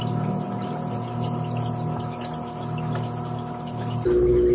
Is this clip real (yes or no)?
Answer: yes